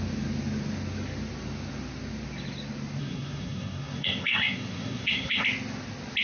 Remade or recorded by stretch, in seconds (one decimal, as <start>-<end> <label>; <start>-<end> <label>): 0.0-3.0 recorded; 3.0-5.4 remade; 5.4-6.2 recorded